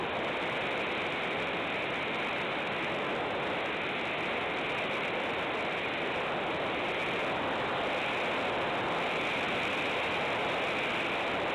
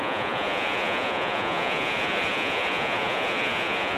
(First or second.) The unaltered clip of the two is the first